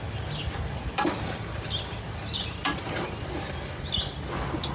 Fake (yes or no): no